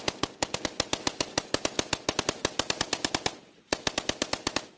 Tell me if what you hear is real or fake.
real